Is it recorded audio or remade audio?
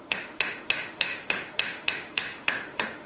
remade